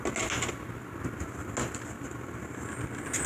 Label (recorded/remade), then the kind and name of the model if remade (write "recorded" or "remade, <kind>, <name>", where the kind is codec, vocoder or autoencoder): recorded